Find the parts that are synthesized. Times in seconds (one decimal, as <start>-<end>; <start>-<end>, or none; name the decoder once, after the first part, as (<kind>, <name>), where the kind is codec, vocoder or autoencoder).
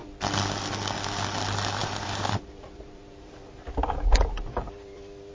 1.8-5.3 (vocoder, BigVGAN v2)